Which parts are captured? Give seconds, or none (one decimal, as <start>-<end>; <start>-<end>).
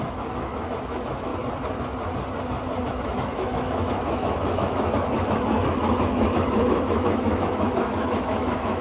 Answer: 1.3-2.9